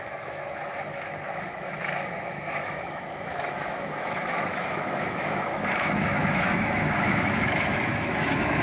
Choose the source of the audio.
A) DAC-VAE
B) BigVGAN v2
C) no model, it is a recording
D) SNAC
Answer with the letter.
A